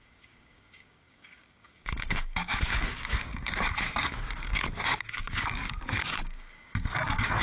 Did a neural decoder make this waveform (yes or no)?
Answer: yes